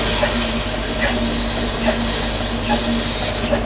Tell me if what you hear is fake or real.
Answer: real